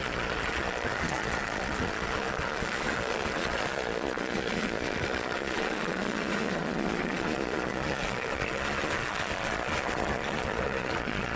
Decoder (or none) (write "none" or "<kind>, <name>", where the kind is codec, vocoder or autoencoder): vocoder, Vocos